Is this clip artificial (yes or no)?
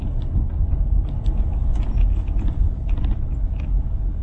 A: no